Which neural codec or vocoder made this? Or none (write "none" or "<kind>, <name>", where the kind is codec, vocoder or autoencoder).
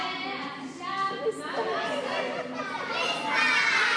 none